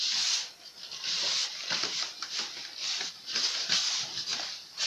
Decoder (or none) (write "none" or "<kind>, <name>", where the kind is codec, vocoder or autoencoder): none